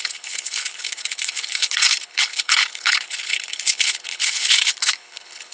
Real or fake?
fake